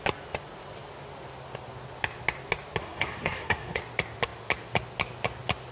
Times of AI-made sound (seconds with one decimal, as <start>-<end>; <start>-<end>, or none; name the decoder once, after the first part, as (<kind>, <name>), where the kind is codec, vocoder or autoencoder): 2.8-3.8 (codec, SNAC)